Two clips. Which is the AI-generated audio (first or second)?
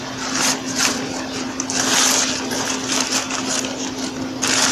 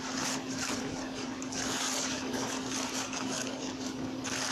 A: second